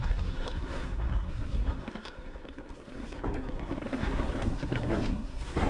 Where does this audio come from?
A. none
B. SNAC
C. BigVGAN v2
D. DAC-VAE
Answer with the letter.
B